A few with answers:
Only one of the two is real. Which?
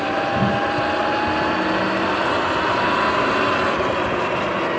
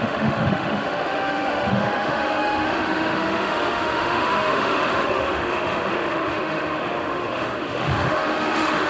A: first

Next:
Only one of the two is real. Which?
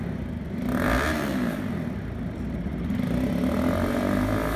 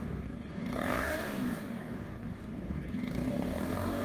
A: first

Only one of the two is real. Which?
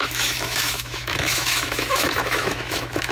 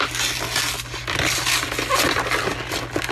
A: second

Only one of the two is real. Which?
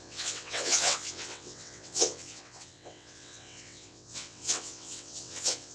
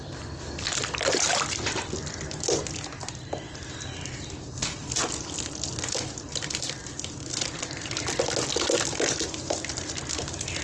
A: second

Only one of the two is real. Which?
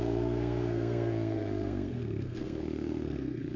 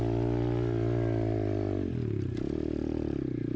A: second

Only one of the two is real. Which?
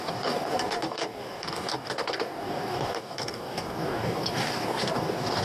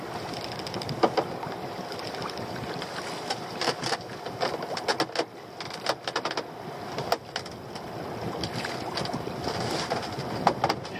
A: second